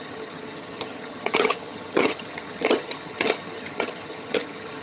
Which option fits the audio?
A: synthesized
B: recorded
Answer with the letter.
A